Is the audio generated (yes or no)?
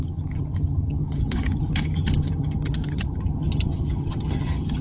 yes